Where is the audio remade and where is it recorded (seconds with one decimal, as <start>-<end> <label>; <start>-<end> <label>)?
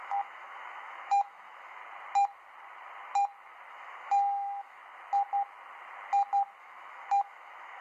0.0-1.8 remade; 1.8-3.7 recorded; 3.7-4.8 remade; 4.8-6.6 recorded; 6.6-7.8 remade